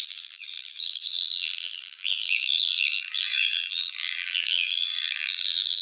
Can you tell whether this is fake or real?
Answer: fake